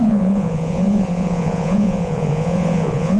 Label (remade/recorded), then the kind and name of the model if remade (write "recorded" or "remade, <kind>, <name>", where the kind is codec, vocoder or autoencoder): remade, vocoder, Vocos